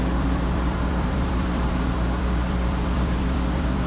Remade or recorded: remade